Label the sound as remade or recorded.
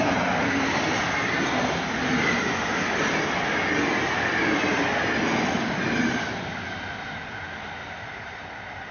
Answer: recorded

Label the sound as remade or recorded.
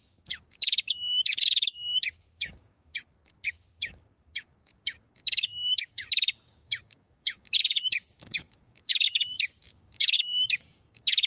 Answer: remade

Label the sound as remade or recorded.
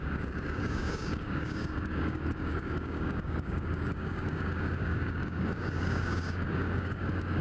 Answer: remade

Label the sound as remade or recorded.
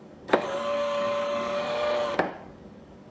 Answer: remade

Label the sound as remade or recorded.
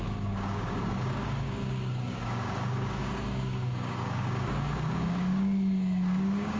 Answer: remade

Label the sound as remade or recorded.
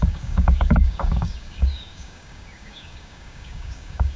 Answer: remade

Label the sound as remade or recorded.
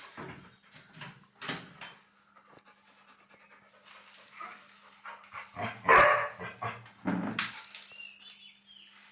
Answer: recorded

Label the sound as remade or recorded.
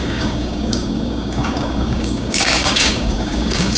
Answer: remade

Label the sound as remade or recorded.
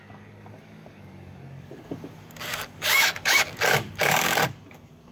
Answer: remade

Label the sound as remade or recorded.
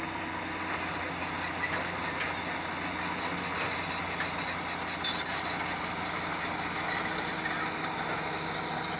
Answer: recorded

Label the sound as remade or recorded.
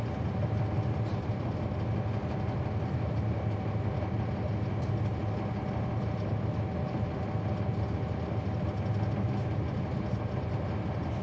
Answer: recorded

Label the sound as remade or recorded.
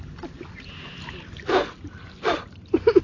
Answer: recorded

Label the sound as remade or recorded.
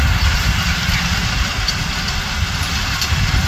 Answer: recorded